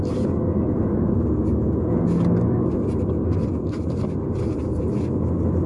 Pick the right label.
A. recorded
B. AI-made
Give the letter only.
A